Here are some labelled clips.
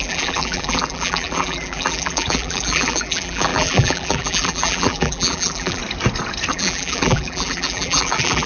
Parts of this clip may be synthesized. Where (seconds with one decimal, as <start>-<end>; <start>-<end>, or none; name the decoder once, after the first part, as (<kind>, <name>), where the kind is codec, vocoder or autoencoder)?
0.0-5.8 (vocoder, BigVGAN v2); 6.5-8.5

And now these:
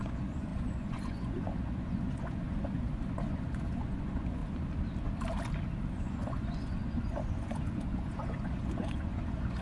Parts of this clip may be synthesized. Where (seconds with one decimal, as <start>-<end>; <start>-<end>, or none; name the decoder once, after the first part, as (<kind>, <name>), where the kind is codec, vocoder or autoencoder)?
0.0-4.4 (vocoder, Vocos); 5.9-9.6

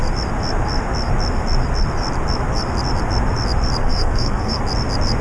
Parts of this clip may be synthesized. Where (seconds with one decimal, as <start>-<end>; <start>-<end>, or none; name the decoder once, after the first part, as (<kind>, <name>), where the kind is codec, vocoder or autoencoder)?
3.8-4.6 (codec, SNAC)

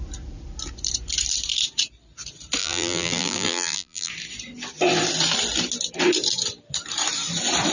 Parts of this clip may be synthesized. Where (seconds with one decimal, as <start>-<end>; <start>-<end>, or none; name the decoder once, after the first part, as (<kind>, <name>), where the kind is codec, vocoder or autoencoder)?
2.6-4.1 (vocoder, BigVGAN v2)

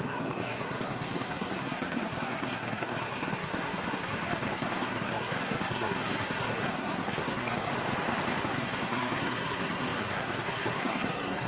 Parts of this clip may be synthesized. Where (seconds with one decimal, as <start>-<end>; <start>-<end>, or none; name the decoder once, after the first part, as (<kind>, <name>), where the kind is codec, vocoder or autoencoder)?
0.0-7.7 (codec, SNAC); 8.4-11.5

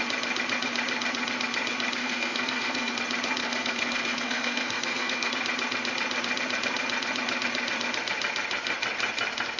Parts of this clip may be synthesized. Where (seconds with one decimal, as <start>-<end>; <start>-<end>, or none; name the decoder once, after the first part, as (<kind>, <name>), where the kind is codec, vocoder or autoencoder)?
2.0-2.9 (codec, SNAC); 3.4-5.3